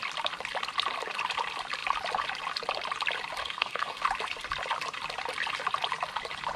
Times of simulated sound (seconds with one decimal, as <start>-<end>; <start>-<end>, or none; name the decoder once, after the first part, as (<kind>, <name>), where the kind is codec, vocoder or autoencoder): 3.4-4.0 (codec, SNAC)